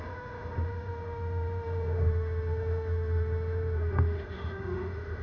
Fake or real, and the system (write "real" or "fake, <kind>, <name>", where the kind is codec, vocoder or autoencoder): fake, autoencoder, DAC-VAE